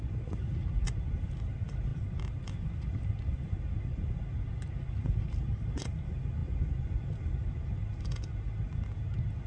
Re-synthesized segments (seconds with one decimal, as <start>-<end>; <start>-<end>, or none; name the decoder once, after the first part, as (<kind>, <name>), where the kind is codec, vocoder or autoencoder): none